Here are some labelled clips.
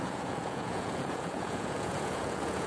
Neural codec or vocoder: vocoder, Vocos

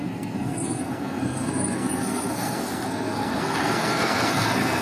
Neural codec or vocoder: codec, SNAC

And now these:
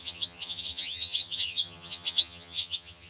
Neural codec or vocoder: vocoder, HiFi-GAN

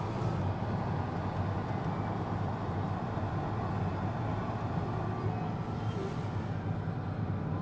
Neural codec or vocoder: none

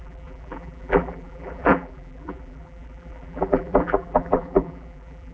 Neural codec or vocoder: vocoder, BigVGAN v2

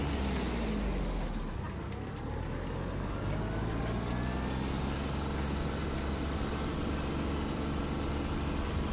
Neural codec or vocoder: none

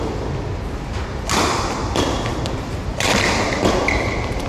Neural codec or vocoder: none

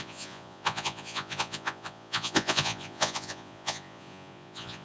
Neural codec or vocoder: vocoder, Vocos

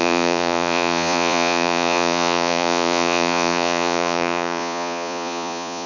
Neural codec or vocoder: vocoder, Vocos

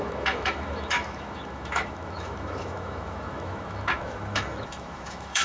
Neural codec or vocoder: autoencoder, DAC-VAE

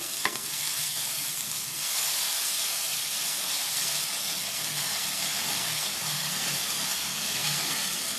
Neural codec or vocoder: codec, SNAC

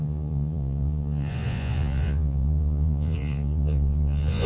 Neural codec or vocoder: vocoder, Vocos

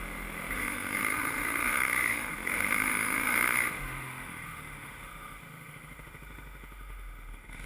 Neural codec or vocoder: autoencoder, DAC-VAE